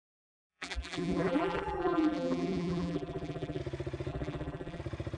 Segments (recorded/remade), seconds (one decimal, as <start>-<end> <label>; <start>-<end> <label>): 0.0-0.5 recorded; 0.5-3.6 remade; 3.6-4.1 recorded; 4.1-4.8 remade; 4.8-5.2 recorded